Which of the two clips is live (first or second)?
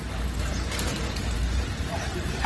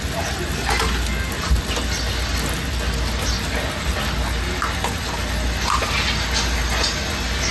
second